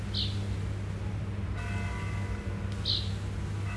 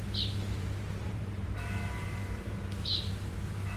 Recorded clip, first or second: first